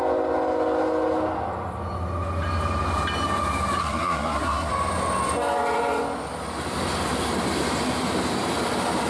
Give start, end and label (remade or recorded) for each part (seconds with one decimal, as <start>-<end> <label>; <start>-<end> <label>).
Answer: 0.0-3.8 recorded; 3.8-4.7 remade; 4.7-9.1 recorded